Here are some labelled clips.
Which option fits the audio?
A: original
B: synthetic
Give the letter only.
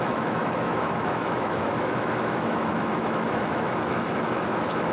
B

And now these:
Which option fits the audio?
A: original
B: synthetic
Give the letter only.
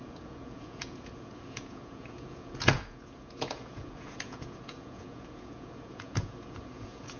B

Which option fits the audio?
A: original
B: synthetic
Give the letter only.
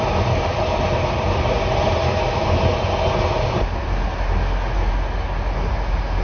A